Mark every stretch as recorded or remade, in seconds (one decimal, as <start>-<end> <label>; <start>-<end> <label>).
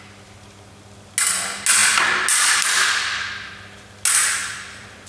0.0-4.4 recorded; 4.4-5.1 remade